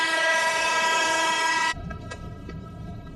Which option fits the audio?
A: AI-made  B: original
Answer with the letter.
A